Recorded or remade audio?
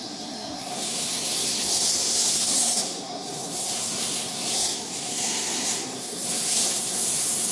remade